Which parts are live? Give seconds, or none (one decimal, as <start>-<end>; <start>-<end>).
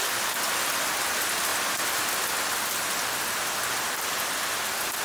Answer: 0.0-5.0